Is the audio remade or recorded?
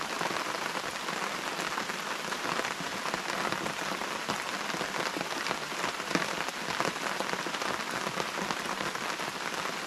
recorded